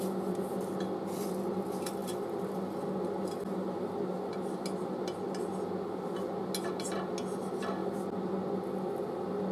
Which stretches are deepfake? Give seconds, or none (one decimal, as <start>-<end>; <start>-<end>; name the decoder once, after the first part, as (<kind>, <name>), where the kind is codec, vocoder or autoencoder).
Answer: none